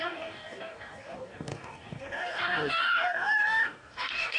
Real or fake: fake